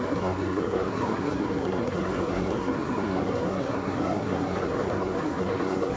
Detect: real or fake fake